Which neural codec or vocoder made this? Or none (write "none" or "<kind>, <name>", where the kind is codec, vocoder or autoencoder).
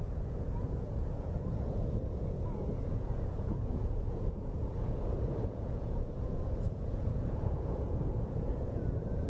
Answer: vocoder, Vocos